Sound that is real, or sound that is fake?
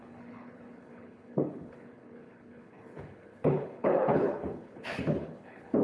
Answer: fake